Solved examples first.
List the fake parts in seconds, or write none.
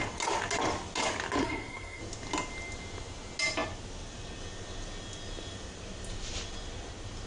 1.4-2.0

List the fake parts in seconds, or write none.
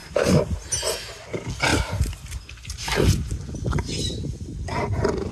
none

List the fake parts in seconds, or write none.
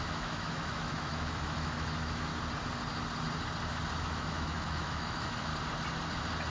0.0-2.3; 4.0-5.5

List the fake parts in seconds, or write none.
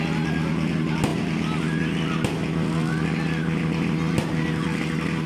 none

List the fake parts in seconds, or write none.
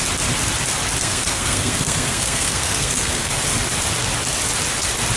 1.0-3.4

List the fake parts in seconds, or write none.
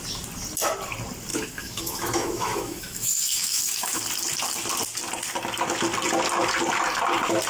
1.3-4.0